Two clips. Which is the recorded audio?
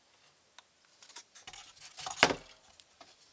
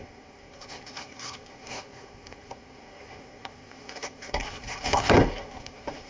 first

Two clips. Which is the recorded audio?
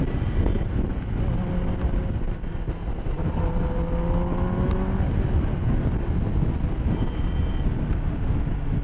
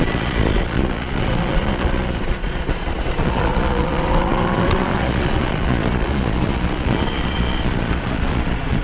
first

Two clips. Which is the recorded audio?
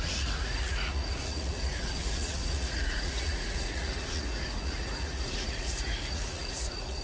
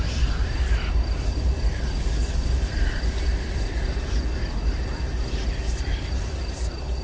second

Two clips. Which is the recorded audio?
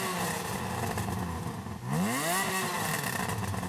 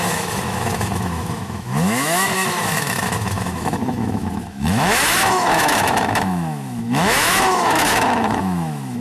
first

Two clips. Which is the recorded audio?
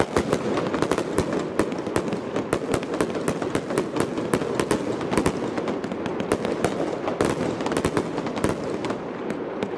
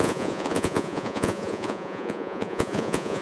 first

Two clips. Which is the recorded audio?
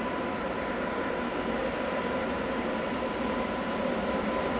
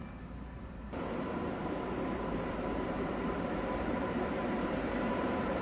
first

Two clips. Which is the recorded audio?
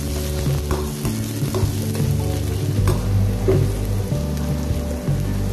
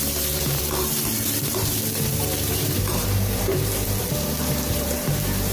first